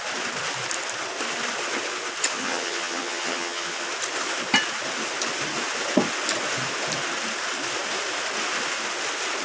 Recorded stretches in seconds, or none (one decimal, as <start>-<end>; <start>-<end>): 0.0-2.3; 3.9-9.4